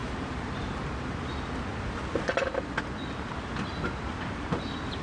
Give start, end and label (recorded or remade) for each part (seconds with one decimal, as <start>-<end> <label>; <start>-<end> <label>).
0.0-0.8 remade; 0.8-5.0 recorded